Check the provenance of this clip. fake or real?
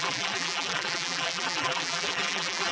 fake